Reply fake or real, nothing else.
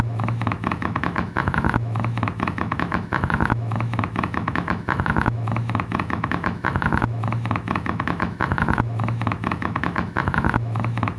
fake